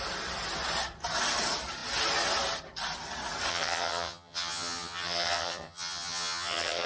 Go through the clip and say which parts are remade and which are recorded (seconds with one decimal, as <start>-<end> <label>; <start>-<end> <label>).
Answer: 0.0-3.5 recorded; 3.5-6.9 remade